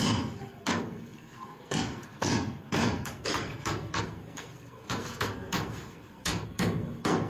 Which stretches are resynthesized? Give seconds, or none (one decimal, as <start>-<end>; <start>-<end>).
0.0-7.3